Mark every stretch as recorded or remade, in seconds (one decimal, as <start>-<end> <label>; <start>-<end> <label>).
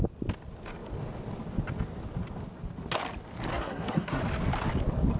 0.0-3.5 recorded; 3.5-4.2 remade; 4.2-5.2 recorded